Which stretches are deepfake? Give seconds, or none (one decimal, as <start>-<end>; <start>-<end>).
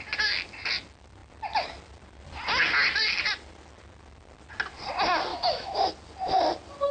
5.3-5.9